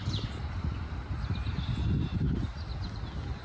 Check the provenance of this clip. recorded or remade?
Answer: recorded